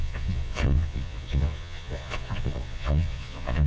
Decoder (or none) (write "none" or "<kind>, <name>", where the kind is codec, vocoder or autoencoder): vocoder, Vocos